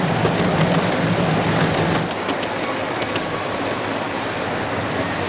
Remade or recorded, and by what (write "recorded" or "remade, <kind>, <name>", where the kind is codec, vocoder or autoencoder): recorded